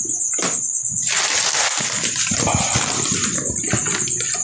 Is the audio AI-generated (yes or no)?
no